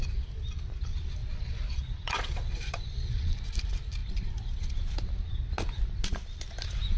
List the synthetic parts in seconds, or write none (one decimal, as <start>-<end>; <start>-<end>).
1.2-3.4